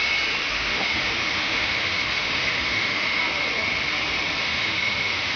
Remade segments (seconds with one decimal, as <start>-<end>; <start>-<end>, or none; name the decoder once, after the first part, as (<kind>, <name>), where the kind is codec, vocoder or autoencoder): 0.5-3.2 (autoencoder, DAC-VAE); 4.4-5.4